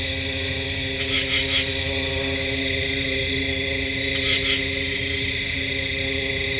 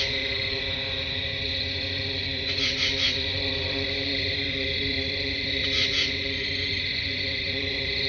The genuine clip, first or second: first